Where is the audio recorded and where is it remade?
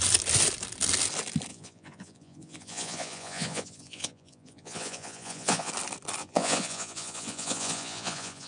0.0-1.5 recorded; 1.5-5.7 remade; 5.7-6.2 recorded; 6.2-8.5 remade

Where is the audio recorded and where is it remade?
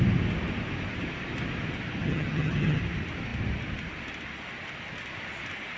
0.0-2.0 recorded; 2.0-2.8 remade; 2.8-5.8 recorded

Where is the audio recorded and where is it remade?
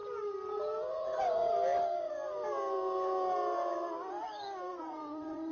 0.0-0.9 recorded; 0.9-1.4 remade; 1.4-4.7 recorded; 4.7-5.5 remade